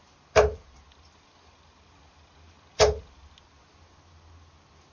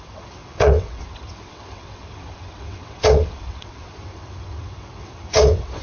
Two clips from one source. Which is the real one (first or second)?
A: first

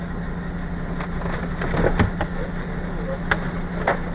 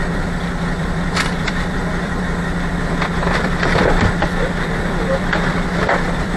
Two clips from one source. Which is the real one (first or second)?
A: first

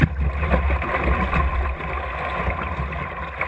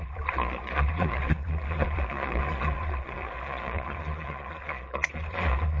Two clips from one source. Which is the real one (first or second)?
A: first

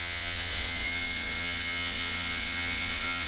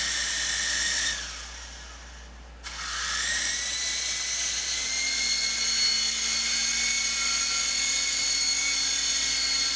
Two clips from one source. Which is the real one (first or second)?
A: second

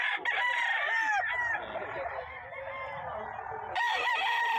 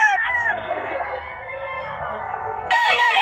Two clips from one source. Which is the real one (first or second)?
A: first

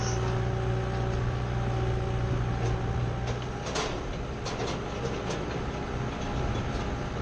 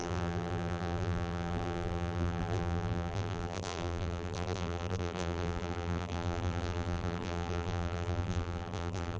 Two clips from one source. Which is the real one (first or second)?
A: first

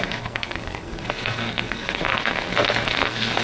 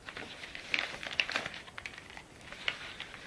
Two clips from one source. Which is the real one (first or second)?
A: second